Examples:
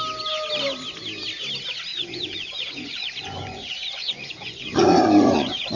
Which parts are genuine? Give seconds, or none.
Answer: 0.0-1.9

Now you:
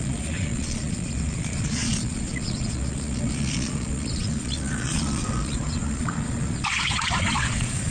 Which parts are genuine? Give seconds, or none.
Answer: none

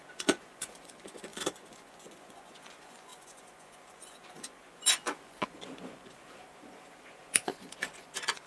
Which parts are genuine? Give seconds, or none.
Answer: none